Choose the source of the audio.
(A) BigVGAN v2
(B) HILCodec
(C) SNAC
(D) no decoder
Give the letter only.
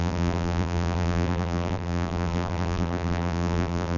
A